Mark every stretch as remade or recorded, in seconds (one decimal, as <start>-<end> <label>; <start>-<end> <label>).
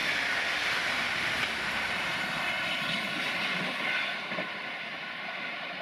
0.0-0.8 recorded; 0.8-2.1 remade; 2.1-5.2 recorded; 5.2-5.8 remade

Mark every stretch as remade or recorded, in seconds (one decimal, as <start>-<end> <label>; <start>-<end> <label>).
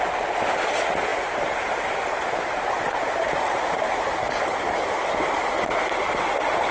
0.0-1.1 recorded; 1.1-4.3 remade; 4.3-6.7 recorded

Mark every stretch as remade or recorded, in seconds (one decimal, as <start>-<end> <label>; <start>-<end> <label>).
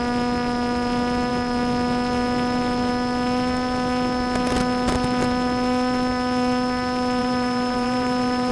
0.0-7.2 recorded; 7.2-8.5 remade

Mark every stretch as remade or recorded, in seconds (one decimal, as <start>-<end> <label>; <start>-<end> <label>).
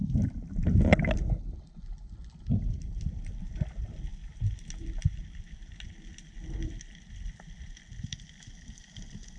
0.0-9.4 recorded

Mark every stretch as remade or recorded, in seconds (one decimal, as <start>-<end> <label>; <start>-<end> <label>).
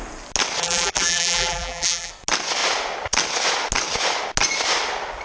0.0-0.6 recorded; 0.6-2.1 remade; 2.1-5.2 recorded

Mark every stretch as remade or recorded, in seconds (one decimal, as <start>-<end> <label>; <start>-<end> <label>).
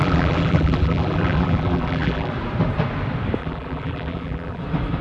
0.0-2.3 remade; 2.3-3.4 recorded; 3.4-4.6 remade; 4.6-5.0 recorded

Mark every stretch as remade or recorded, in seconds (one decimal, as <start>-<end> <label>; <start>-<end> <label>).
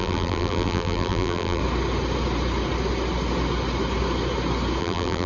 0.0-1.6 remade; 1.6-4.8 recorded; 4.8-5.3 remade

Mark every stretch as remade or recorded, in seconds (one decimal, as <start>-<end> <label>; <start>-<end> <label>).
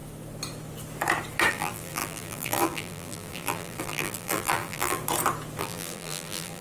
0.0-1.5 recorded; 1.5-5.0 remade; 5.0-5.6 recorded; 5.6-6.6 remade